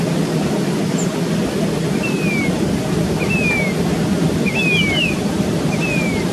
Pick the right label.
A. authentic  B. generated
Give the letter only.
A